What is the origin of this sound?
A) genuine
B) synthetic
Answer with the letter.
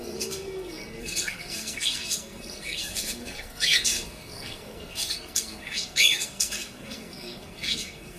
B